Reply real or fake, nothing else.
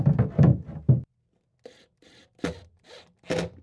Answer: real